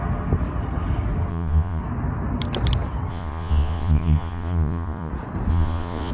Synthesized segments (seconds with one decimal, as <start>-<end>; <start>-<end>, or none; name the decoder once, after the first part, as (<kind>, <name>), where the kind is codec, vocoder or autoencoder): 1.3-1.8 (vocoder, Vocos); 3.1-5.1; 5.5-6.1